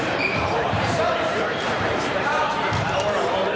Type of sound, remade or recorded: remade